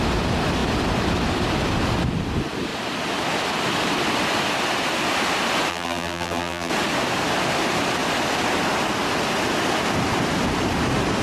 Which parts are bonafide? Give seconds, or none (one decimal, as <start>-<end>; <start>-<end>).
0.0-5.7; 6.7-11.2